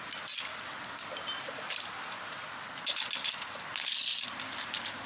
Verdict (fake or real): real